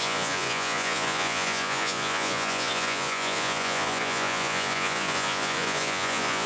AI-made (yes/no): yes